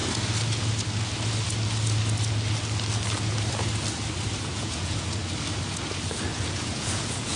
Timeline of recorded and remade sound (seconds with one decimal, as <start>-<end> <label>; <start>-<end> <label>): 0.0-4.4 recorded; 4.4-5.2 remade; 5.2-6.3 recorded; 6.3-7.4 remade